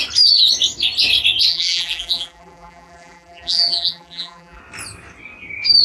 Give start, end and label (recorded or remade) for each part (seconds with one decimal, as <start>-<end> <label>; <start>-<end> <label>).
0.0-1.5 recorded; 1.5-4.6 remade; 4.6-5.8 recorded